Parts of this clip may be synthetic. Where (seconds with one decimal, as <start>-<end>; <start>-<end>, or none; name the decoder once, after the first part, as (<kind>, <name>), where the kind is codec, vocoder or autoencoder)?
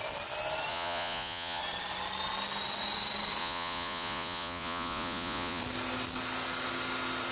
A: 0.7-1.6 (vocoder, Vocos); 3.4-5.6